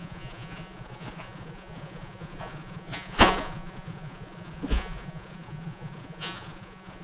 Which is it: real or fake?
fake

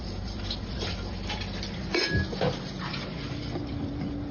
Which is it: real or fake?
real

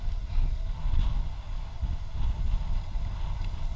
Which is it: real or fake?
real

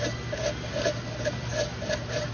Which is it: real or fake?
real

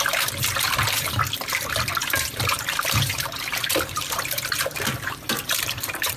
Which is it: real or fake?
fake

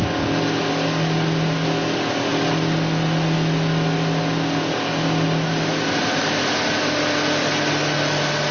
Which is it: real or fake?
real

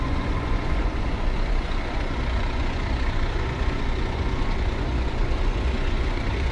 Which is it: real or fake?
fake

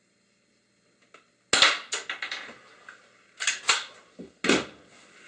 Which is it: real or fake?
real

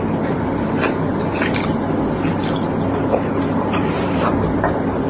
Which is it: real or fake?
real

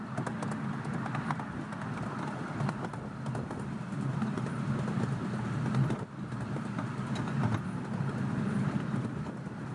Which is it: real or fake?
real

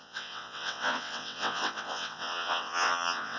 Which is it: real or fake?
fake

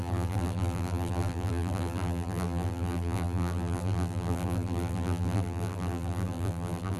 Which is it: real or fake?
fake